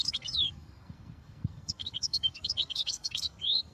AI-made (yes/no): yes